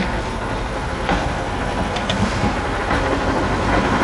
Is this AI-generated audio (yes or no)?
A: yes